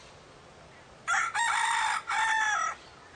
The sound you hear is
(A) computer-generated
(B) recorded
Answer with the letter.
B